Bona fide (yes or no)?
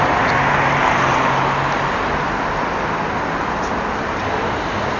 yes